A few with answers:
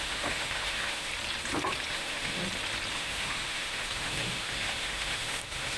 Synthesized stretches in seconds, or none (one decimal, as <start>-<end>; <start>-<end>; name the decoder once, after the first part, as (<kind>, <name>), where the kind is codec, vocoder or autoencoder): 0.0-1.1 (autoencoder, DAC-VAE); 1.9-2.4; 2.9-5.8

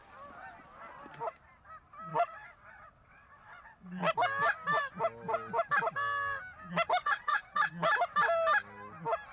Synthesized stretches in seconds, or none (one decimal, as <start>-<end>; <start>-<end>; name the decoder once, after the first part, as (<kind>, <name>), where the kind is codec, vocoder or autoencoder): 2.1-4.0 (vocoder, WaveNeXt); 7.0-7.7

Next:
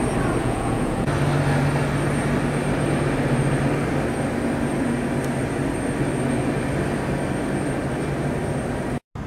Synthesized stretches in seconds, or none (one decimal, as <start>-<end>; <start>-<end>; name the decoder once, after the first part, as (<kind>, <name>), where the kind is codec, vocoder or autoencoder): 0.4-1.1 (vocoder, Vocos)

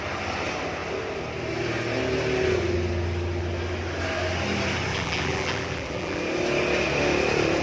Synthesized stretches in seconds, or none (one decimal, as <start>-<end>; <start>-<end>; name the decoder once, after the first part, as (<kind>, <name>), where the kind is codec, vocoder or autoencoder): 4.9-6.2 (vocoder, BigVGAN v2)